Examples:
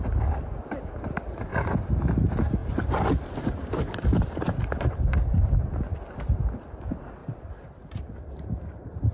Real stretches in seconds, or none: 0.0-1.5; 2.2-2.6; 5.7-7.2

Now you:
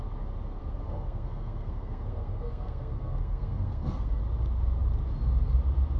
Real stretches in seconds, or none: 0.0-0.6; 4.2-6.0

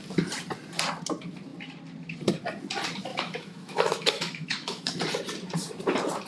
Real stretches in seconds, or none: 0.0-3.1; 5.0-6.3

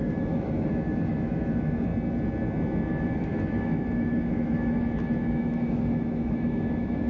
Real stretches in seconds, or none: 1.9-2.9

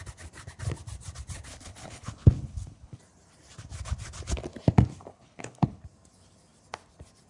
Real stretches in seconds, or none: 0.0-1.5; 3.0-5.1; 5.8-7.3

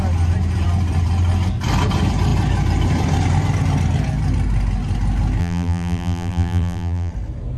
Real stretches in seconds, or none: 0.0-5.4; 7.1-7.6